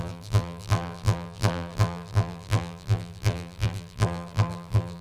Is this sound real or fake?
fake